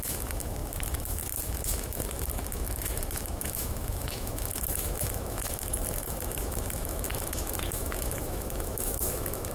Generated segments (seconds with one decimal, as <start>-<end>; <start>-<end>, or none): 0.0-9.5